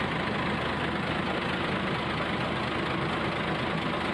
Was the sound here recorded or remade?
recorded